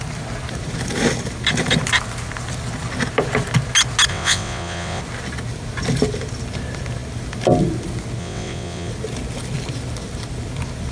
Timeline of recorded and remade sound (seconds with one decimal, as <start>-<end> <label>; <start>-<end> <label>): 0.0-4.1 recorded; 4.1-5.0 remade; 5.0-8.2 recorded; 8.2-8.9 remade; 8.9-10.9 recorded